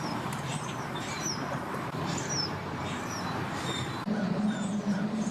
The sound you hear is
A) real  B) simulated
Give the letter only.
B